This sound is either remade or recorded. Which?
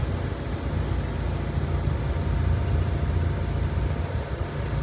recorded